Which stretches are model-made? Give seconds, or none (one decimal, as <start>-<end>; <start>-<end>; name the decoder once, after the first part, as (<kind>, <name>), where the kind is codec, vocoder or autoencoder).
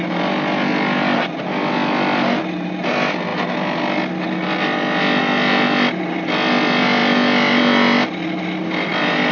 none